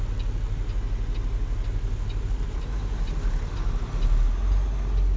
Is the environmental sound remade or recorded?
recorded